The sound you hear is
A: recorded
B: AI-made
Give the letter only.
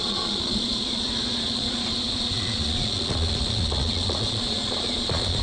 B